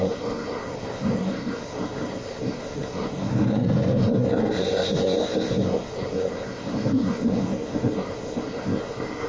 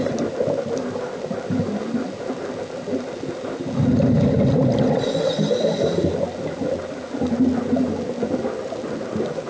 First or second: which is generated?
first